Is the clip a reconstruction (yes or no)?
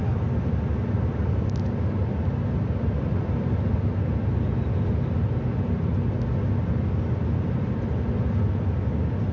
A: no